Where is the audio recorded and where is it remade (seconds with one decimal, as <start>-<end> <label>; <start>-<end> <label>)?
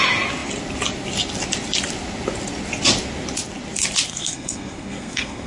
0.0-4.1 recorded; 4.1-5.5 remade